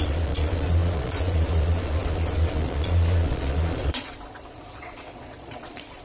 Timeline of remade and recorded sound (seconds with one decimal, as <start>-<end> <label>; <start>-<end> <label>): 0.0-6.0 remade